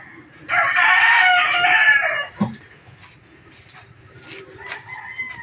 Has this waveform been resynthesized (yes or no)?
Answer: no